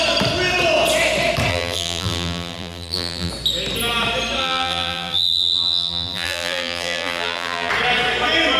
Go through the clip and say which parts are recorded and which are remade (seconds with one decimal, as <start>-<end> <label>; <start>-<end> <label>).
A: 0.0-1.5 recorded; 1.5-3.3 remade; 3.3-4.4 recorded; 4.4-7.7 remade; 7.7-8.6 recorded